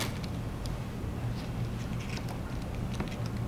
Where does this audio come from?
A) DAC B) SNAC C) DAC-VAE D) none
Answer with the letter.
D